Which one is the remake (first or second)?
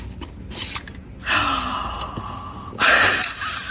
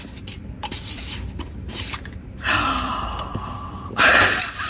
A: second